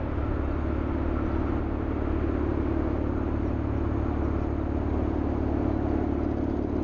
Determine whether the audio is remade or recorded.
recorded